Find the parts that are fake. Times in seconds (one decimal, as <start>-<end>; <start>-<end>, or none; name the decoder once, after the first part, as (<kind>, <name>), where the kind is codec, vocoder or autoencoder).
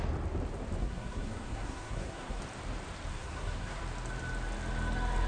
0.8-2.4 (codec, SNAC); 3.1-3.8